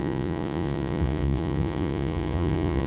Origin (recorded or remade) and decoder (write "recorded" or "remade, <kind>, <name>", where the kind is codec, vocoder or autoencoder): remade, vocoder, Vocos